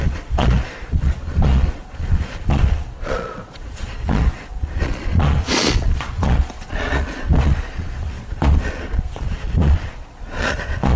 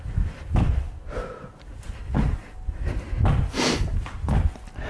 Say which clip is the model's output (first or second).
first